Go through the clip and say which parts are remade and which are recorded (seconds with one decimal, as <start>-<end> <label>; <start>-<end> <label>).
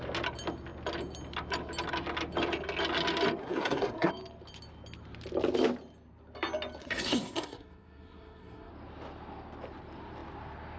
0.0-3.4 recorded; 3.4-4.1 remade; 4.1-6.8 recorded; 6.8-8.7 remade; 8.7-10.8 recorded